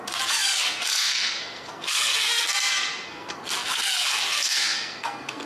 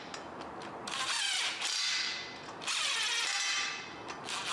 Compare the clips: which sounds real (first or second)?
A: second